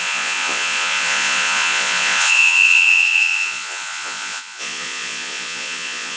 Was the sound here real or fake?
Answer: fake